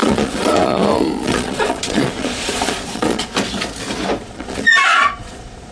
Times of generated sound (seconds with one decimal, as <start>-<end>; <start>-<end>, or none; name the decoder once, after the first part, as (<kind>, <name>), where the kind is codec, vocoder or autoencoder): 0.0-3.3 (vocoder, Vocos); 4.2-5.7